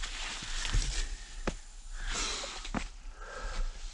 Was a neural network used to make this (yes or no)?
no